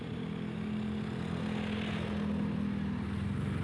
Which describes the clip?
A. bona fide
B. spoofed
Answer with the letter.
A